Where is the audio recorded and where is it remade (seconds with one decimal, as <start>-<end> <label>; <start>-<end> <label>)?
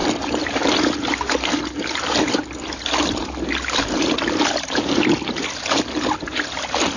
0.0-7.0 recorded